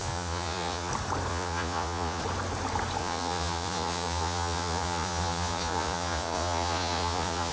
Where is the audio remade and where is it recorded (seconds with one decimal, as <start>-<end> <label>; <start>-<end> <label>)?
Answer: 0.0-0.9 remade; 0.9-1.3 recorded; 1.3-2.2 remade; 2.2-3.0 recorded; 3.0-7.5 remade